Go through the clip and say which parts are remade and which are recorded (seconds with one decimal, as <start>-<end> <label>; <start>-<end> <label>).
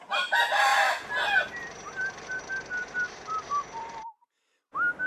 0.0-2.8 recorded; 2.8-4.6 remade; 4.6-5.1 recorded